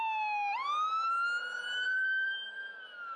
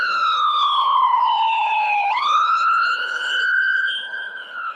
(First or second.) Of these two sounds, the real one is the first